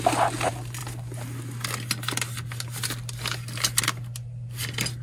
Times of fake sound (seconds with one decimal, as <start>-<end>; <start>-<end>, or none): none